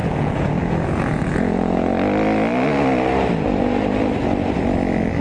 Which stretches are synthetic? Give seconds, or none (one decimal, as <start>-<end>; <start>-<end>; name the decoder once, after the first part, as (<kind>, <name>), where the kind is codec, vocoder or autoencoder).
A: 0.0-1.9 (vocoder, Vocos)